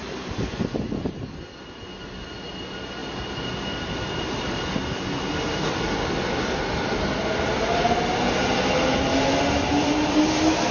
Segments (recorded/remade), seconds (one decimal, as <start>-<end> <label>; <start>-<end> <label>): 0.0-10.7 recorded